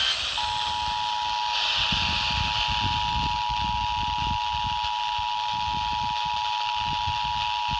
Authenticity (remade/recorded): recorded